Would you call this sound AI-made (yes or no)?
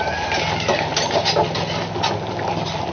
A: no